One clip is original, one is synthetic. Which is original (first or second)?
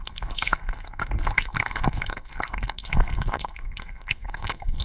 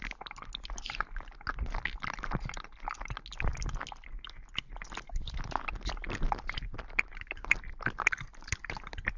second